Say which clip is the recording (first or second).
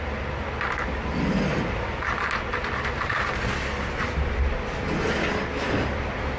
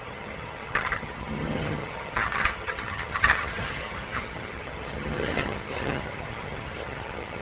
first